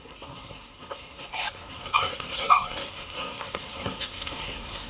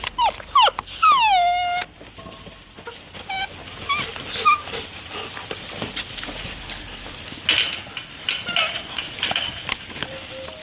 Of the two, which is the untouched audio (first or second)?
second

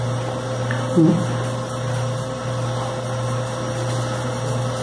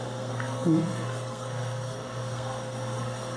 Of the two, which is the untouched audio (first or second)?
first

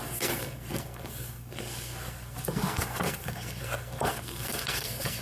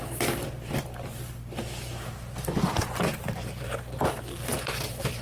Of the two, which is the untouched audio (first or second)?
second